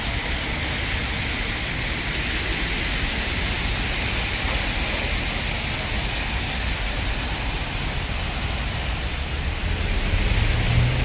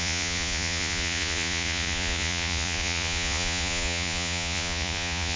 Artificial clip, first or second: second